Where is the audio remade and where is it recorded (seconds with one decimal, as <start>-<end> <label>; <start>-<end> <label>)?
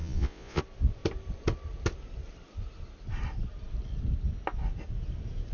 0.0-0.6 remade; 0.6-5.5 recorded